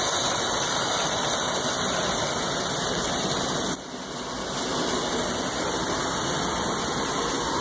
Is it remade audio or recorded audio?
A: recorded